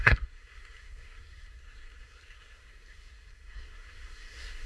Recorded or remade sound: remade